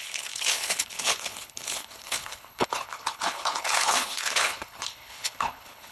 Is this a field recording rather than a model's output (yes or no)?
no